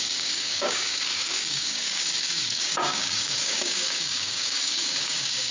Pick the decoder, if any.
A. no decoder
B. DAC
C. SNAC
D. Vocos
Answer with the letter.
B